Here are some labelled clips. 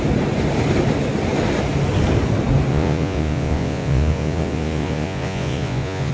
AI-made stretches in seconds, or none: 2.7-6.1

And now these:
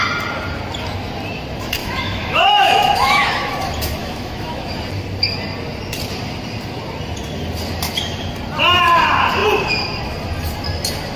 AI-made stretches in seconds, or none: 1.8-3.5; 4.0-4.7

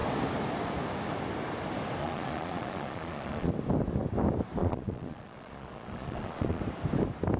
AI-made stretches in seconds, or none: 2.0-3.5; 4.6-6.6

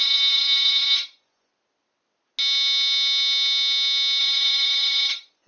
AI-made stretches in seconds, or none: 0.0-1.5; 4.2-5.5

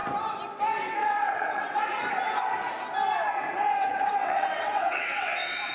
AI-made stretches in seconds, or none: 1.0-1.8; 3.7-5.7

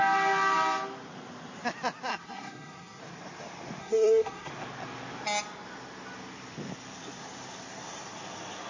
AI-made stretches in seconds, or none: 2.1-3.0; 3.8-4.5

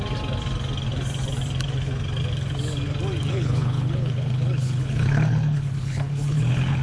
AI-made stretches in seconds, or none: 3.3-6.8